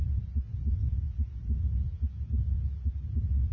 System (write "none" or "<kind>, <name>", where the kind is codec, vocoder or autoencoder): none